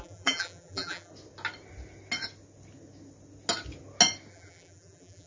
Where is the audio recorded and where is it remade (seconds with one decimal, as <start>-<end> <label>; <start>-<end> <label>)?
0.0-1.1 remade; 1.1-4.3 recorded; 4.3-5.3 remade